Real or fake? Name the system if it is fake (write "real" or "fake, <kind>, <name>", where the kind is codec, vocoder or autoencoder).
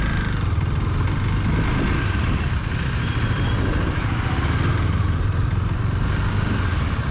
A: real